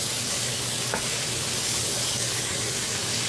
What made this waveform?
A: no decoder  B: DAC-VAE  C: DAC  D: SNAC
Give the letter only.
C